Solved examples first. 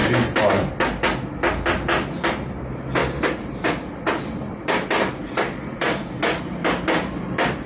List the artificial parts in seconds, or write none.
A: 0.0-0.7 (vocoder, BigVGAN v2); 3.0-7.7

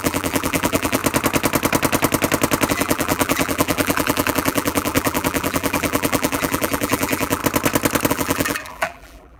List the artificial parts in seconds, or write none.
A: 0.0-1.0 (vocoder, BigVGAN v2); 2.7-7.4; 8.1-9.4

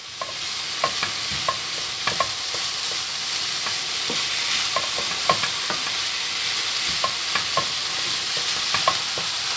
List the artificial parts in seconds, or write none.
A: 1.3-2.5 (vocoder, BigVGAN v2)

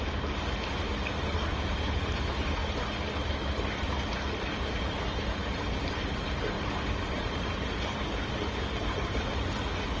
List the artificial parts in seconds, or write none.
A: 0.0-2.6 (vocoder, BigVGAN v2); 4.9-10.0

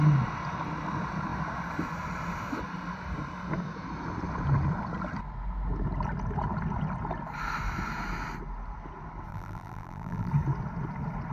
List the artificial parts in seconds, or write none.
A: 9.3-10.3 (vocoder, BigVGAN v2)